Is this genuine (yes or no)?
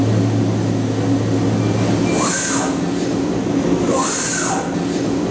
yes